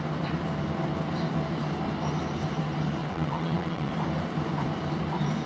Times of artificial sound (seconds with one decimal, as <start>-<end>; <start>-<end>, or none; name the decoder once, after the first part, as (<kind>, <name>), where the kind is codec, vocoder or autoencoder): 3.0-3.9 (vocoder, WaveNeXt)